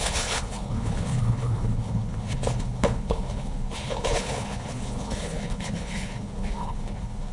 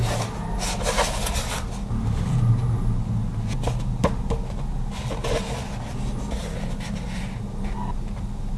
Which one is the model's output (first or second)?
first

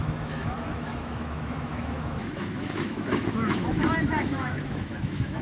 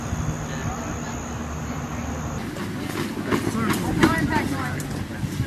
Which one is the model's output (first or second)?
first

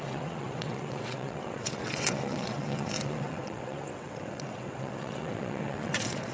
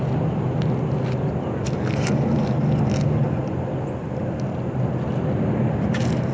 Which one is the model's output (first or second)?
first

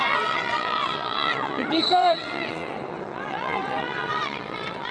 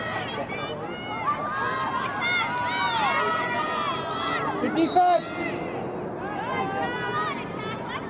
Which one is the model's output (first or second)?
first